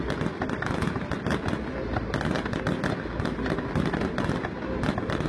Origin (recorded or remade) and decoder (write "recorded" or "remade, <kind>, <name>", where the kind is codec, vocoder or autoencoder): recorded